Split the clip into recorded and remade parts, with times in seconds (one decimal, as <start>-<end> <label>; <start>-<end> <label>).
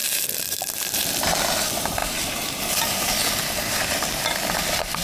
0.0-2.0 remade; 2.0-2.6 recorded; 2.6-5.0 remade